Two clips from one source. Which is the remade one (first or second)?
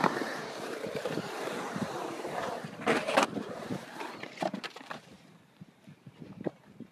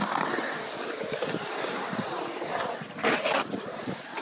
first